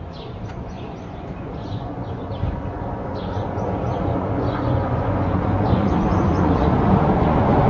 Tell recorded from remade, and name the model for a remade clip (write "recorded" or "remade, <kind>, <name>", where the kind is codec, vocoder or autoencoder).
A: remade, vocoder, Vocos